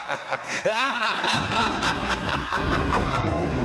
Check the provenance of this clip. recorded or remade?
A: remade